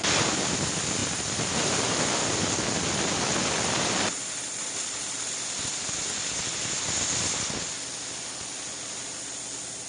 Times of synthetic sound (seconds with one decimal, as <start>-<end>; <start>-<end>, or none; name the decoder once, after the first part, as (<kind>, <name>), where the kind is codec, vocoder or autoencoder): none